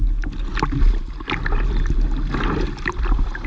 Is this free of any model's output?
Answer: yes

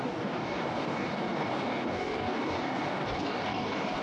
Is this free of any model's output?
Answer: no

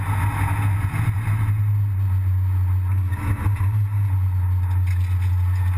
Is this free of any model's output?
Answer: yes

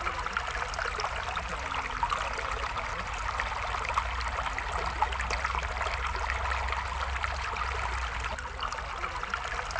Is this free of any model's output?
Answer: yes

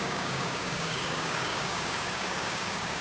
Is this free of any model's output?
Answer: no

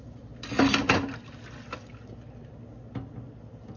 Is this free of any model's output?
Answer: yes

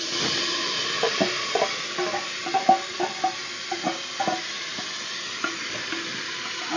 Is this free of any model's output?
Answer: yes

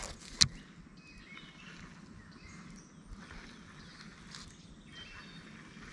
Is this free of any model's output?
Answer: yes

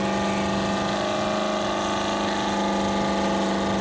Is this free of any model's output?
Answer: yes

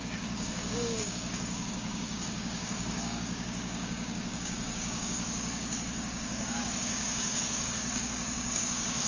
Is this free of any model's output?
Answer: no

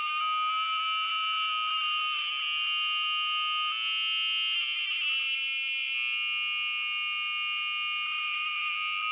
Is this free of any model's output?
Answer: yes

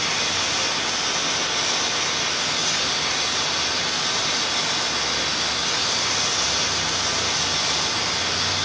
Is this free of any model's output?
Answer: yes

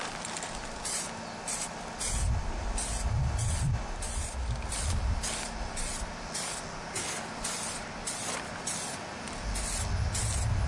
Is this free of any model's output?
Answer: yes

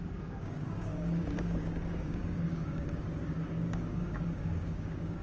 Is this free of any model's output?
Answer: no